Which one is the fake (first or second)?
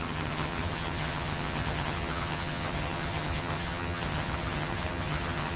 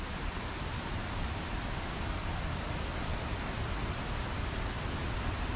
first